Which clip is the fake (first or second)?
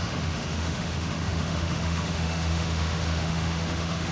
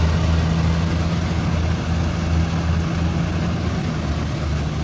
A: first